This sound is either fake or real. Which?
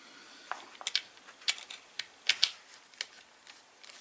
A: real